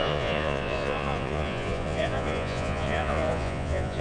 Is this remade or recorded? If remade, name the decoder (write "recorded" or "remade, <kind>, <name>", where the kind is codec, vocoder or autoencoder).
remade, vocoder, Vocos